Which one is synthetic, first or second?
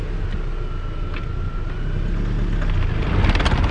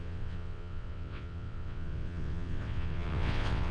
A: second